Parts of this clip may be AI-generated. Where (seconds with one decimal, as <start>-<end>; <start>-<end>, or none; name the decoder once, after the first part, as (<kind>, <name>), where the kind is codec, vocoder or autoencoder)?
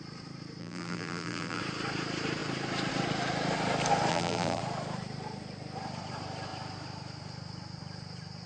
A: 0.6-1.6 (vocoder, BigVGAN v2); 4.1-4.6